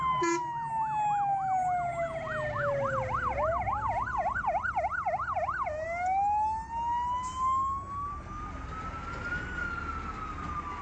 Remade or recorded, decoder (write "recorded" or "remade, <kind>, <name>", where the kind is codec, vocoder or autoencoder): recorded